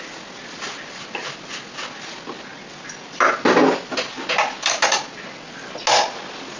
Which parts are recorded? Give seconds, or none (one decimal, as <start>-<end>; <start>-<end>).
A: 0.0-6.6